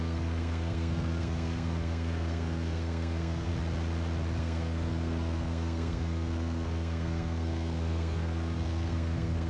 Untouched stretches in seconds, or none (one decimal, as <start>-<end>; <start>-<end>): 3.5-4.4